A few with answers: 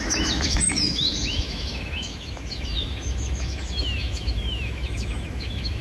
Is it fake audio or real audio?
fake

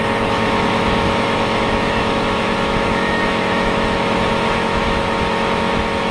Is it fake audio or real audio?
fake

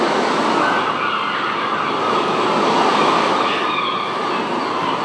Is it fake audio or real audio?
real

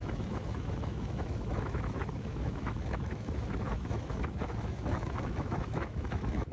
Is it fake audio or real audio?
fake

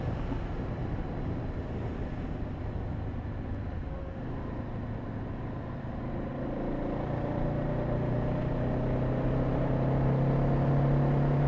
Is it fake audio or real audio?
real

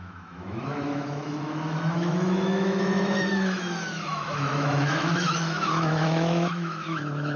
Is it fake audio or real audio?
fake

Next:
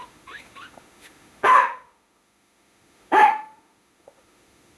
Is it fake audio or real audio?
fake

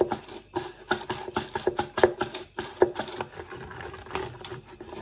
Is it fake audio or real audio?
real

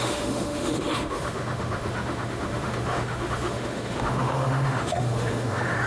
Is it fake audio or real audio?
fake